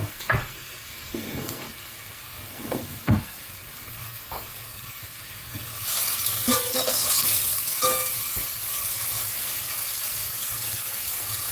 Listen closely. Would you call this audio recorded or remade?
remade